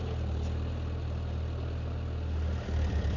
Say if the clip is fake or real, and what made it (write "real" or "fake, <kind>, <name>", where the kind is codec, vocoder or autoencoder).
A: real